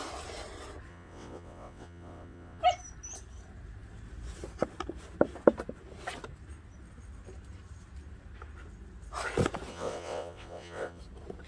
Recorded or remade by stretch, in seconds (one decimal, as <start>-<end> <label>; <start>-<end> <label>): 0.0-0.9 recorded; 0.9-2.6 remade; 2.6-9.7 recorded; 9.7-11.0 remade; 11.0-11.5 recorded